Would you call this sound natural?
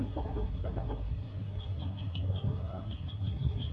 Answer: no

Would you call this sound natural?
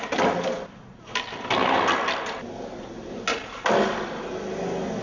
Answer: yes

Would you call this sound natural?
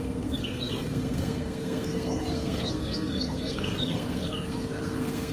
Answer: no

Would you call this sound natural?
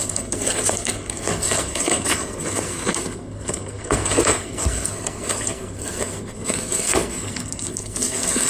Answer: no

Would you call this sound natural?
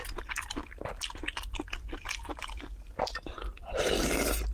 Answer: yes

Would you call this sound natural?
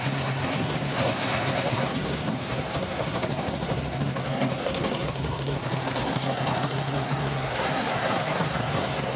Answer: no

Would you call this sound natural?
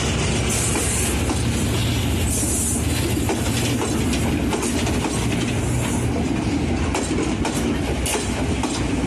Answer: yes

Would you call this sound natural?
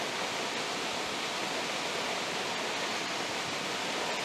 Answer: yes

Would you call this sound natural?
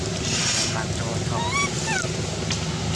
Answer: yes